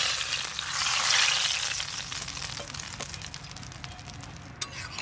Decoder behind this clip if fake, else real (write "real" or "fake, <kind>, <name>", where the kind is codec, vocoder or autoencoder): real